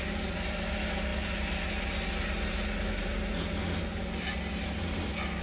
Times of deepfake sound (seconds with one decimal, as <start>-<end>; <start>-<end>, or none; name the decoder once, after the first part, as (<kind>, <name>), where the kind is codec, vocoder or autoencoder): none